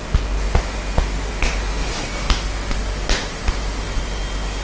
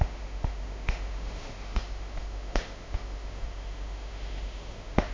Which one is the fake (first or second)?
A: second